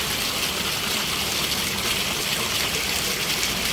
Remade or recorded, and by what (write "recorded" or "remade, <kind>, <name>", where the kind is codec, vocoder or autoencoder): recorded